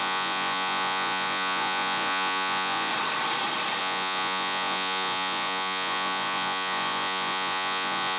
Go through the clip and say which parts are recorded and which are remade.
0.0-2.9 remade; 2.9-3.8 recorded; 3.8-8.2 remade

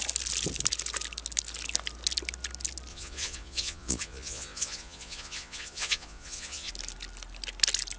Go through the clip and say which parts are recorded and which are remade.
0.0-2.9 recorded; 2.9-6.7 remade; 6.7-8.0 recorded

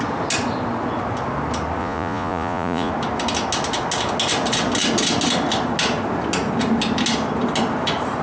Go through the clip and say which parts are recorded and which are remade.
0.0-1.8 recorded; 1.8-2.9 remade; 2.9-8.2 recorded

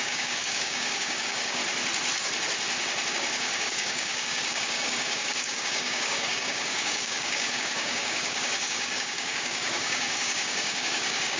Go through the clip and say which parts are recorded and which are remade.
0.0-1.6 remade; 1.6-3.1 recorded; 3.1-11.4 remade